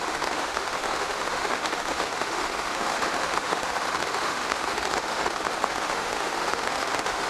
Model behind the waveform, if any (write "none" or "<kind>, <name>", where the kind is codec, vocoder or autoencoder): autoencoder, DAC-VAE